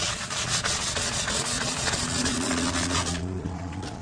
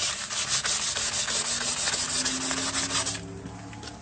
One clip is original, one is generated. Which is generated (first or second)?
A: first